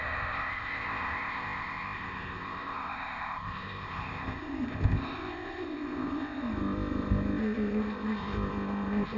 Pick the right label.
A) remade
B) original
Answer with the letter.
A